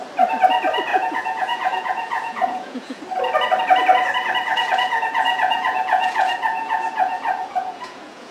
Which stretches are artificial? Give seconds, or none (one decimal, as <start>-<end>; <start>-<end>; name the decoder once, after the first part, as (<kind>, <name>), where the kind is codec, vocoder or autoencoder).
0.9-3.0 (vocoder, Vocos); 4.5-8.3